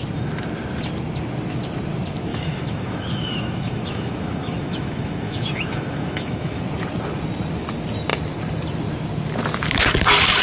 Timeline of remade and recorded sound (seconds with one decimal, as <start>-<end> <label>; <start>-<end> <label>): 0.0-2.3 recorded; 2.3-6.6 remade; 6.6-10.4 recorded